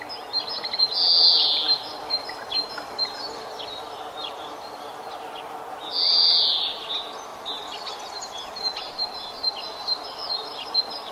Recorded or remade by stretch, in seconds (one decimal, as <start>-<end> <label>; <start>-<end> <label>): 0.0-11.1 recorded